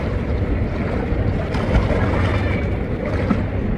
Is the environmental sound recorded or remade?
recorded